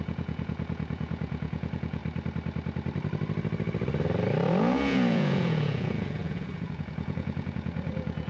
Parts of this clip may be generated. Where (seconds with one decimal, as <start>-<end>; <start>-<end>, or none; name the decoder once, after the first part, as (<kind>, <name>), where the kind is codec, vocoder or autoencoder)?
0.0-2.0 (vocoder, Vocos); 4.6-8.3